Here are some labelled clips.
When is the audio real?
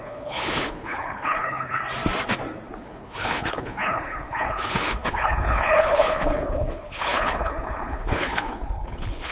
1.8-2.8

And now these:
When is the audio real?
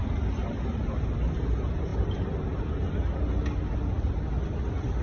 0.0-5.0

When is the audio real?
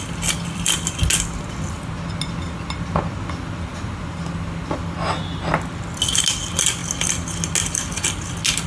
0.0-8.7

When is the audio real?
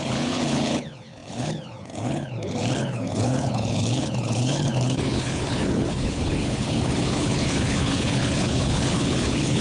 none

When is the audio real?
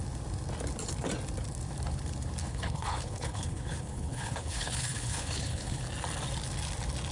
0.0-2.4; 5.8-7.1